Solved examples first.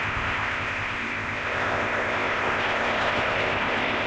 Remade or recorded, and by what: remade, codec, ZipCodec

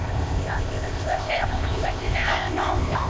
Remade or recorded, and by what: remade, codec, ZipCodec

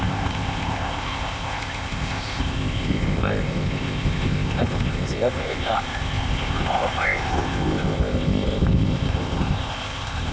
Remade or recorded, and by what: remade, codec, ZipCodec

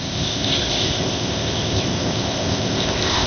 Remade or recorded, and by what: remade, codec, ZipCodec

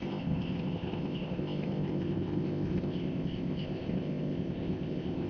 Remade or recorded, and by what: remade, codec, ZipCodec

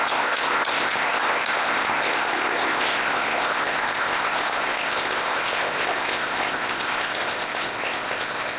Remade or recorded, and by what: remade, codec, ZipCodec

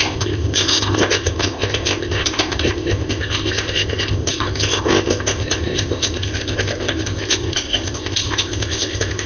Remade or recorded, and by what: remade, codec, ZipCodec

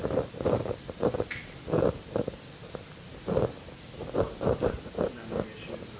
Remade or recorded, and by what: recorded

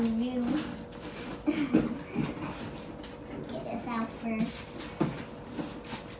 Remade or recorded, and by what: recorded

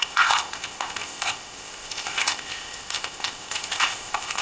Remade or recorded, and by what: remade, codec, ZipCodec